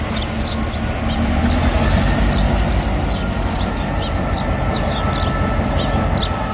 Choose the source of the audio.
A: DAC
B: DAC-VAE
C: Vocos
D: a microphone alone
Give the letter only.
D